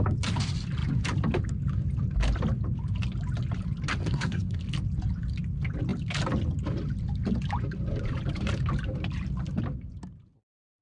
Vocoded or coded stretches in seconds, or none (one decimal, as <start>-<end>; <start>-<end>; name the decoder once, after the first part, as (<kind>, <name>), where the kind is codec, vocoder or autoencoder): 4.0-4.6 (codec, SNAC)